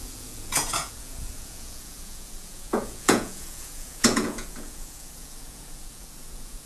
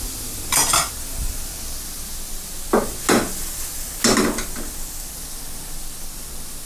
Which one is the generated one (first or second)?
first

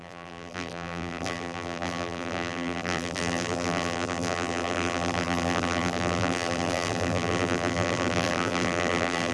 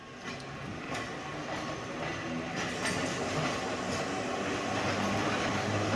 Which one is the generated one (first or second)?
first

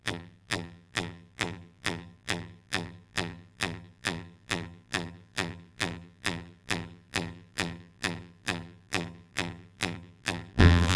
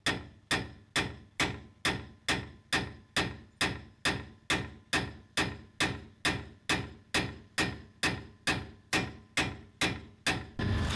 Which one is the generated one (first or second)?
first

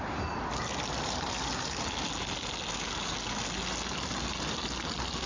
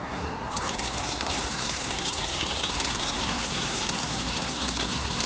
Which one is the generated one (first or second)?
second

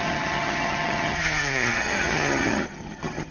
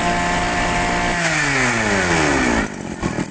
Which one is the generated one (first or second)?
first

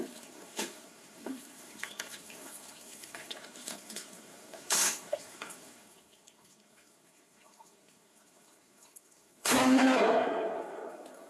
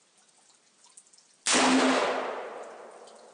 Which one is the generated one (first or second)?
first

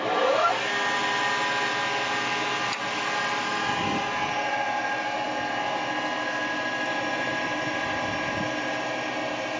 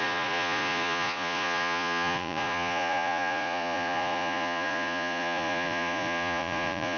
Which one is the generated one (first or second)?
second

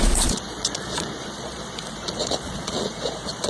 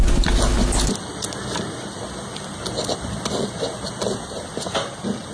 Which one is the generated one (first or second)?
first